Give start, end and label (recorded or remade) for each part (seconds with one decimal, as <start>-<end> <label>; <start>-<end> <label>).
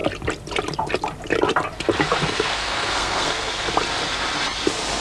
0.0-2.2 recorded; 2.2-3.7 remade; 3.7-5.0 recorded